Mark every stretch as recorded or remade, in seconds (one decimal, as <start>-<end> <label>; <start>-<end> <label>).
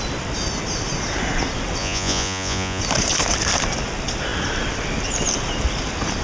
0.0-1.8 recorded; 1.8-2.8 remade; 2.8-6.2 recorded